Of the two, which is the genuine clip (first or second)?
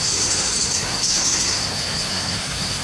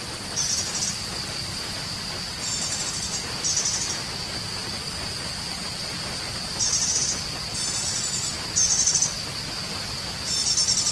second